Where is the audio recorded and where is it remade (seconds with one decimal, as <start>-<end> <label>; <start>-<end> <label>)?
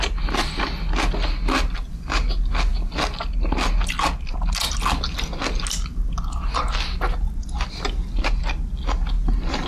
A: 0.0-9.7 recorded